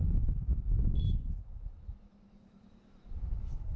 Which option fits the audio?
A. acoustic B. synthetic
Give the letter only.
B